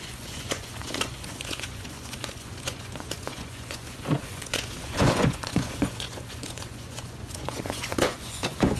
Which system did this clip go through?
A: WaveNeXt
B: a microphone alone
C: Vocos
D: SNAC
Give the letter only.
C